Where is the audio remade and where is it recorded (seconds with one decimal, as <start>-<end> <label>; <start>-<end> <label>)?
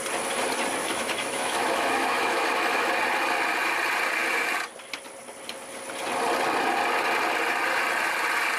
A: 0.0-0.8 recorded; 0.8-2.9 remade; 2.9-8.6 recorded